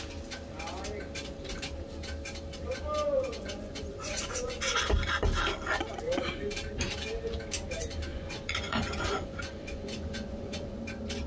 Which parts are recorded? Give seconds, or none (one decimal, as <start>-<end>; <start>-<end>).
0.0-3.1; 4.8-8.1; 10.8-11.3